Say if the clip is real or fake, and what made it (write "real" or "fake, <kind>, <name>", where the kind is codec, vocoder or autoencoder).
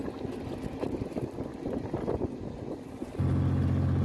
real